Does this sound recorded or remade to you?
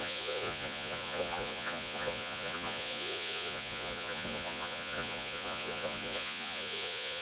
remade